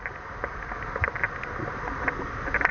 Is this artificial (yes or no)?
no